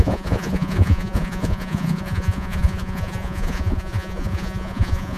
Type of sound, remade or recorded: remade